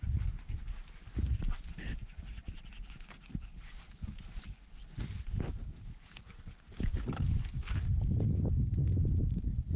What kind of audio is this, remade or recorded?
recorded